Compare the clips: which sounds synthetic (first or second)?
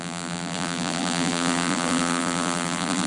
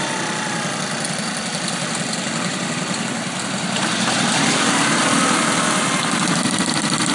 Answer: first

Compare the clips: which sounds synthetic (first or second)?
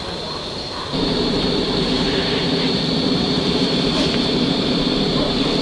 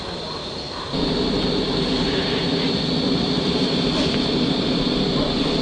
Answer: first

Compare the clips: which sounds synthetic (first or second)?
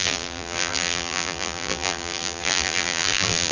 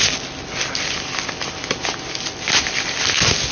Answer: first